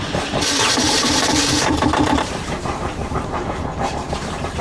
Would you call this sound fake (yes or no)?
yes